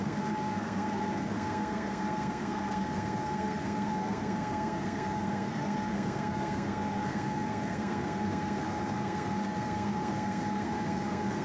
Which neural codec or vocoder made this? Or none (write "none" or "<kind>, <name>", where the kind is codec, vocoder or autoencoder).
codec, SNAC